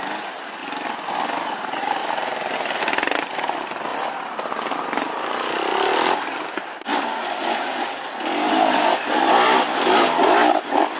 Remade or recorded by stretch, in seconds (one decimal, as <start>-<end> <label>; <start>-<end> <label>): 0.0-0.6 recorded; 0.6-1.1 remade; 1.1-2.0 recorded; 2.0-2.8 remade; 2.8-5.7 recorded; 5.7-11.0 remade

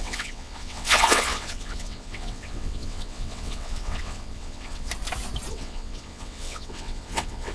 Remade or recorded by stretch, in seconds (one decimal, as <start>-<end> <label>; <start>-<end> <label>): 0.0-4.9 remade; 4.9-5.5 recorded; 5.5-7.5 remade